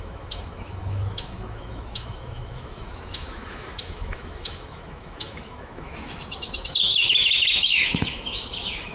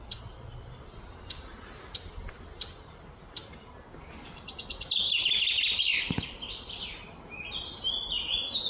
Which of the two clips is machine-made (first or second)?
first